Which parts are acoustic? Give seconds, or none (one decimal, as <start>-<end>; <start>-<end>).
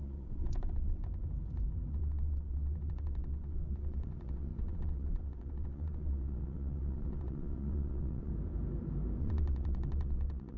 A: 1.0-1.9; 8.3-9.2